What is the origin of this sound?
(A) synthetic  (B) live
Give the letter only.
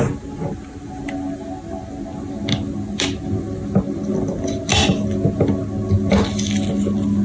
B